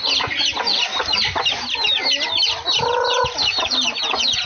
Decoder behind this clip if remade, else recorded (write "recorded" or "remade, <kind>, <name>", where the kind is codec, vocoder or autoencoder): recorded